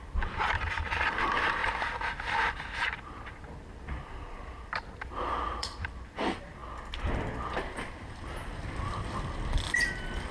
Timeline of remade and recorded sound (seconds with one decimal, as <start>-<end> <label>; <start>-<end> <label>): 0.0-6.6 remade; 6.6-7.1 recorded; 7.1-10.3 remade